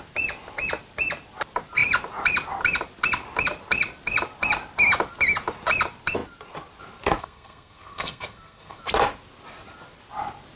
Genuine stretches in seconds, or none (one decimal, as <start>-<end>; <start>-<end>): 0.0-7.2; 8.8-10.6